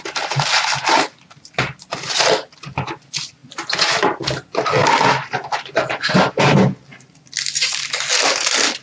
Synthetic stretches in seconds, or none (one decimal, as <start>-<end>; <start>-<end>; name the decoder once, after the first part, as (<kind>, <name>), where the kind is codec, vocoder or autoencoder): none